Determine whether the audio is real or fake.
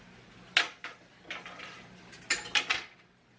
real